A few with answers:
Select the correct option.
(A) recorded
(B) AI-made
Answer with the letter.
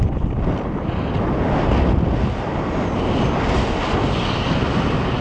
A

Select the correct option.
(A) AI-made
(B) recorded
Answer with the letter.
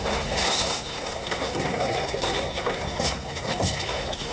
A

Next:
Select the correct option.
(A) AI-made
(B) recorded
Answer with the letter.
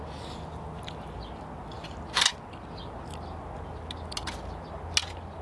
B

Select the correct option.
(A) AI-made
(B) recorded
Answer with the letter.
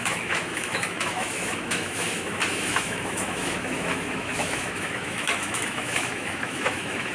A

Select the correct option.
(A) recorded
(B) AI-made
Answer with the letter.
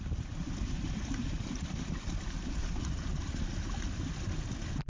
A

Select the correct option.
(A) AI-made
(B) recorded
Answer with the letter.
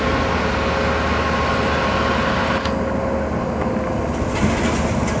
B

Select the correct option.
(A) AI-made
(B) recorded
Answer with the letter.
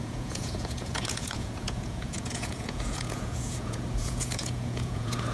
A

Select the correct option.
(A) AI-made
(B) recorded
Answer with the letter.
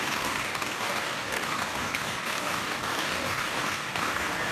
A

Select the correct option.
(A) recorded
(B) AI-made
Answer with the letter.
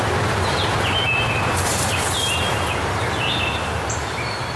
A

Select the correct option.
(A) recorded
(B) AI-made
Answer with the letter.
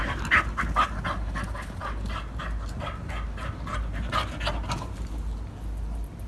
A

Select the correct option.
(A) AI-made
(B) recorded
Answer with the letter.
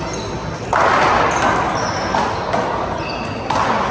B